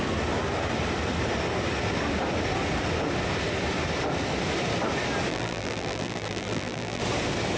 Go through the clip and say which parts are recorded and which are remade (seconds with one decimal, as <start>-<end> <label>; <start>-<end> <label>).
0.0-5.3 recorded; 5.3-7.0 remade; 7.0-7.6 recorded